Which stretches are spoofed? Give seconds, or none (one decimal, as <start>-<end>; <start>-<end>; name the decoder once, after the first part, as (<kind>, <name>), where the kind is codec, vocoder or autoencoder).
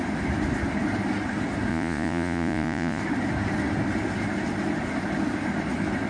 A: 1.7-3.0 (vocoder, Vocos)